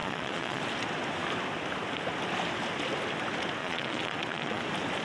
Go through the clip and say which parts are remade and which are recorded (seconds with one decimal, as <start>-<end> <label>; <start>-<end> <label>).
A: 0.0-0.6 remade; 0.6-3.6 recorded; 3.6-4.6 remade; 4.6-5.0 recorded